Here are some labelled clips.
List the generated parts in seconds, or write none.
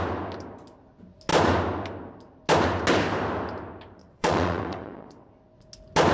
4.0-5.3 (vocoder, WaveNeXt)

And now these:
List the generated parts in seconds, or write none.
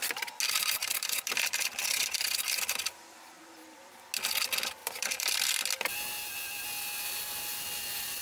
0.8-4.0 (vocoder, BigVGAN v2); 4.8-5.5